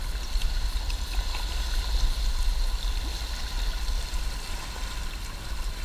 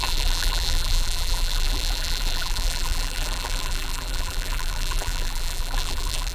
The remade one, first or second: second